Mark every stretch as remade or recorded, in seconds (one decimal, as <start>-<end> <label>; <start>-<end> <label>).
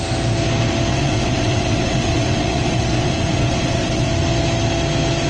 0.0-0.9 recorded; 0.9-4.1 remade; 4.1-5.3 recorded